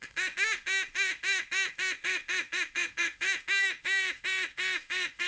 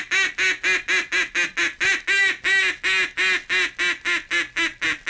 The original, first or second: second